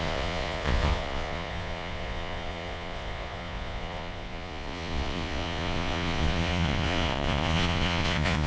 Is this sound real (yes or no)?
no